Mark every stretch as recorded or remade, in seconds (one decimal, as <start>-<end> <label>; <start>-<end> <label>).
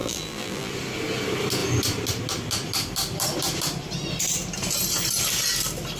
0.0-0.7 remade; 0.7-6.0 recorded